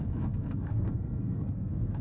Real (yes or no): no